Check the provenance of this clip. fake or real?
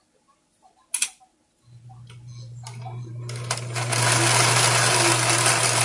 real